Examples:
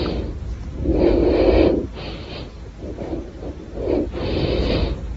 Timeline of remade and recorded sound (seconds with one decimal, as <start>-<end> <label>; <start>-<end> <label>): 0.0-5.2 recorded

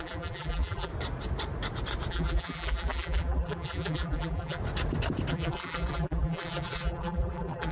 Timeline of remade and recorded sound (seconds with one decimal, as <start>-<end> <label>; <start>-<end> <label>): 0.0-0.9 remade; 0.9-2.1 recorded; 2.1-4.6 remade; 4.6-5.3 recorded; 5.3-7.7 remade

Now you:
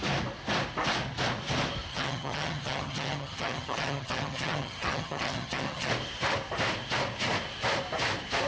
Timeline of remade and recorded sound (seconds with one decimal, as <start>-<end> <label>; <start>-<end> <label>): 0.0-1.9 recorded; 1.9-5.9 remade; 5.9-8.5 recorded

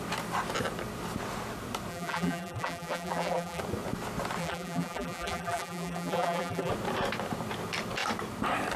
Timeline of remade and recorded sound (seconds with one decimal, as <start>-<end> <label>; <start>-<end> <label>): 0.0-1.9 recorded; 1.9-3.6 remade; 3.6-4.4 recorded; 4.4-6.7 remade; 6.7-8.8 recorded

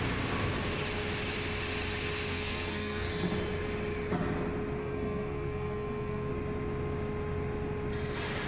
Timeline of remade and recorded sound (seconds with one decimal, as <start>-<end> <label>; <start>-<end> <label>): 0.0-2.3 recorded; 2.3-3.1 remade; 3.1-4.8 recorded; 4.8-6.3 remade; 6.3-8.5 recorded